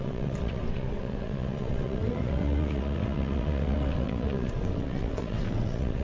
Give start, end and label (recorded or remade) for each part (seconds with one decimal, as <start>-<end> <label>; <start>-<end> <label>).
0.0-6.0 remade